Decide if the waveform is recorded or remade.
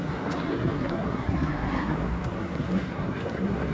remade